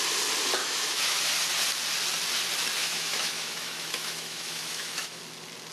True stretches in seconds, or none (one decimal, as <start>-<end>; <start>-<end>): 0.0-0.6; 1.2-2.8; 5.2-5.7